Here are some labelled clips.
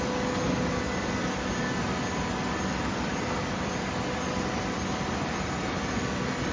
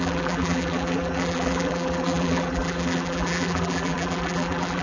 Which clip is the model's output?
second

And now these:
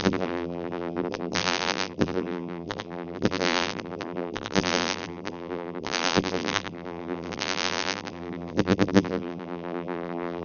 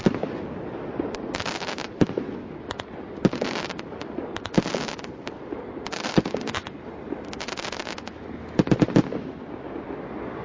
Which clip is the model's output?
first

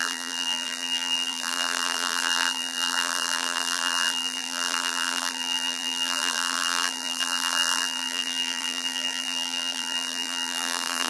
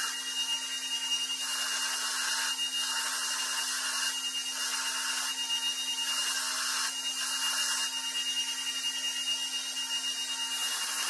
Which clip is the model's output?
first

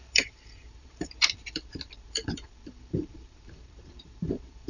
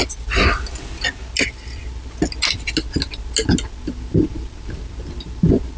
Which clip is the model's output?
first